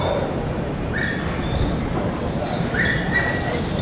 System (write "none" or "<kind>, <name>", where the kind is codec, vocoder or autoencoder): vocoder, BigVGAN v2